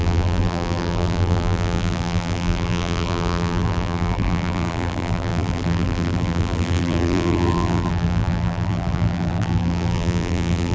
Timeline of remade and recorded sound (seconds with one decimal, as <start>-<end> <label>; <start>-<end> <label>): 0.0-10.7 remade